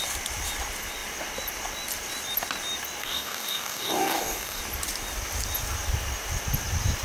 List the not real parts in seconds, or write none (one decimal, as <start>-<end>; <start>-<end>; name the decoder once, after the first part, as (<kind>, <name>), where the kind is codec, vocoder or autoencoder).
3.0-4.6 (codec, DAC)